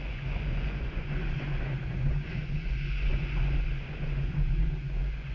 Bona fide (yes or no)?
no